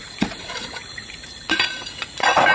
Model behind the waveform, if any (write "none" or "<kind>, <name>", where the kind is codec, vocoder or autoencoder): vocoder, Vocos